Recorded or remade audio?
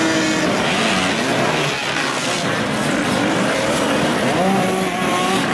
recorded